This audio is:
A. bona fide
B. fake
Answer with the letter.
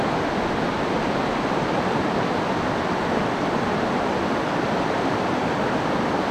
A